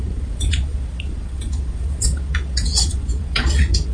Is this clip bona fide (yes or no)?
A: no